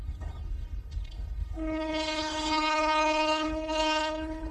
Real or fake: fake